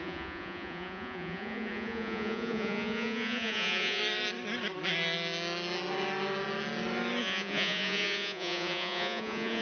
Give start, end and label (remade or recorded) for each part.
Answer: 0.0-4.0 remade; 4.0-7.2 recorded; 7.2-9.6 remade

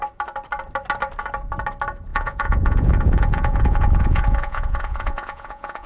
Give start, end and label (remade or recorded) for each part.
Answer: 0.0-2.1 recorded; 2.1-5.9 remade

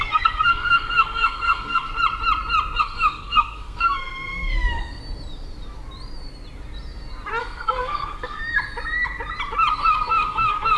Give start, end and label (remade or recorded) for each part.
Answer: 0.0-1.9 remade; 1.9-2.8 recorded; 2.8-5.0 remade; 5.0-7.4 recorded; 7.4-8.4 remade; 8.4-9.7 recorded; 9.7-10.8 remade